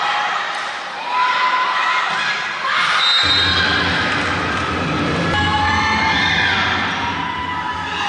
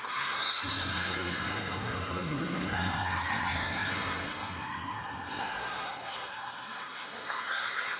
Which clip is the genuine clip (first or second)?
first